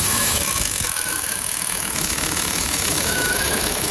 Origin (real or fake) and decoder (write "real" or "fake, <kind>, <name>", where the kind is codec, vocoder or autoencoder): fake, autoencoder, DAC-VAE